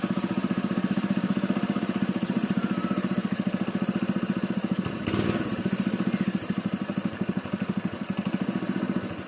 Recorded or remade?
remade